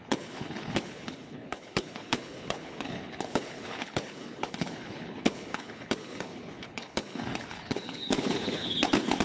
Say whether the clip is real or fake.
fake